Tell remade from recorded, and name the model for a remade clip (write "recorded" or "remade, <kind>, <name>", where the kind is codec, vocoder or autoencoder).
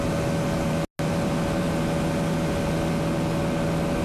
recorded